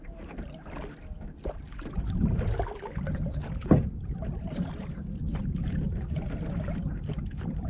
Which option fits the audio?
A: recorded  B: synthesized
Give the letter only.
A